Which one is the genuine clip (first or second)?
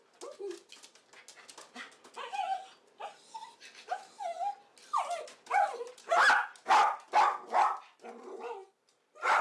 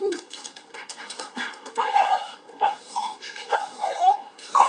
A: first